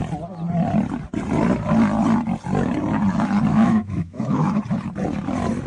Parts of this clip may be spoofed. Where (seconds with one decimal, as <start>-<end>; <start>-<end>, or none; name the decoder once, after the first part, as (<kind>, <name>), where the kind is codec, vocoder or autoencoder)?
3.5-4.6 (autoencoder, DAC-VAE)